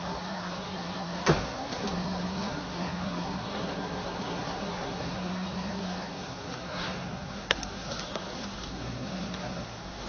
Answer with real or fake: fake